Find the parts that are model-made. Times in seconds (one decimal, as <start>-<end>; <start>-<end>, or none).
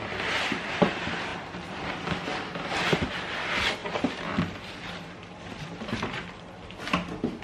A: 1.3-2.2; 3.8-6.8